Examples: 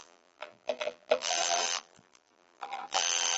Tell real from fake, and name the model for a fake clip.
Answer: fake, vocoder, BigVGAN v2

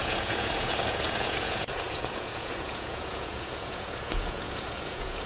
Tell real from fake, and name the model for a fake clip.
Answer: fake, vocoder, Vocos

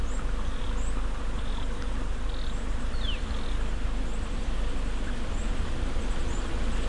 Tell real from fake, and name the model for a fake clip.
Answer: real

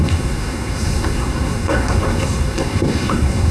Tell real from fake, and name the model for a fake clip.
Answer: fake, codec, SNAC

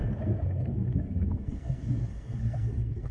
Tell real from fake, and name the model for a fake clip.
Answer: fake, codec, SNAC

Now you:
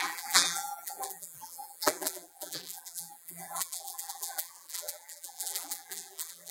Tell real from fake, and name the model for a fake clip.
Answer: fake, vocoder, BigVGAN v2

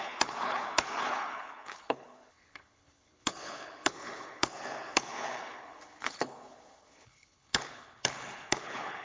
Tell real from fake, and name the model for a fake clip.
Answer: fake, codec, HILCodec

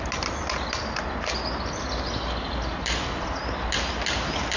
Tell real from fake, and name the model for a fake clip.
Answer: real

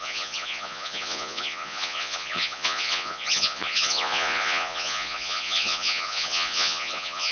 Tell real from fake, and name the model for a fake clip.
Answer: fake, vocoder, Vocos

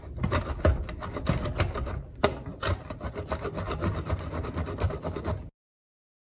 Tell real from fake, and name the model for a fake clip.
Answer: real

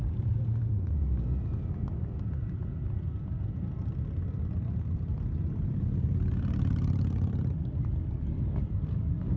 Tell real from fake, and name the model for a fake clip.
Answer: fake, vocoder, BigVGAN v2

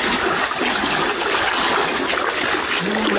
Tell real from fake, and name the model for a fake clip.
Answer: real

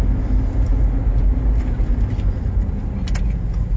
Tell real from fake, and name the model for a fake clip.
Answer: real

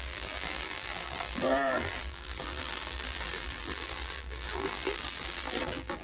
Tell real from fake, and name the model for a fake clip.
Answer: fake, vocoder, BigVGAN v2